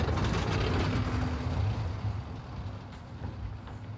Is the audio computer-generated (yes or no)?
no